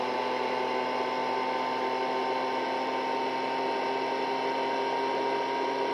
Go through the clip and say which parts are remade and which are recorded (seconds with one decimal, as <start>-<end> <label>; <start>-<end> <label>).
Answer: 0.0-5.9 recorded